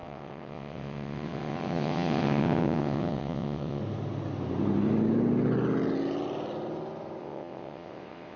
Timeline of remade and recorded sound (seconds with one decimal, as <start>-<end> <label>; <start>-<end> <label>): 0.0-3.8 remade; 3.8-7.2 recorded; 7.2-8.4 remade